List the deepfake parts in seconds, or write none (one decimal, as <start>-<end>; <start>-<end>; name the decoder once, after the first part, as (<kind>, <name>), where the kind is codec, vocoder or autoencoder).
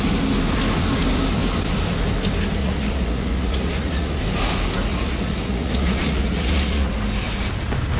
2.6-4.2 (vocoder, Vocos); 4.9-6.9